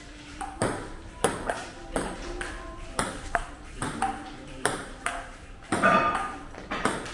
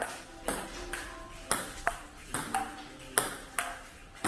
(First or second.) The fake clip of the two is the first